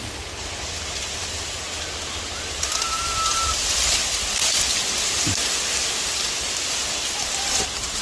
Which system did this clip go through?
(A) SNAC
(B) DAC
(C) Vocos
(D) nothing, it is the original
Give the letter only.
D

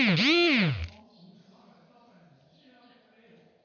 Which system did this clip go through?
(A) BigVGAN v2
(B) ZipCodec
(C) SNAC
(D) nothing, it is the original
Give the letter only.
D